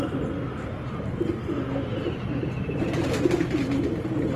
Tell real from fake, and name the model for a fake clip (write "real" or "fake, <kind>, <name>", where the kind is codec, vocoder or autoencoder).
fake, vocoder, BigVGAN v2